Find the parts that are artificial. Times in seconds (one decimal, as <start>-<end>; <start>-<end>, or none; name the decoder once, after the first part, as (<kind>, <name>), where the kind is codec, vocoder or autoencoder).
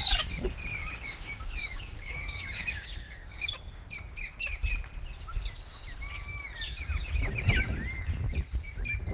0.8-3.5 (codec, DAC)